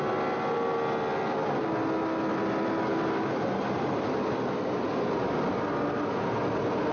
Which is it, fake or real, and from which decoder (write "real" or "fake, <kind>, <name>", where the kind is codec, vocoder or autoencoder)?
real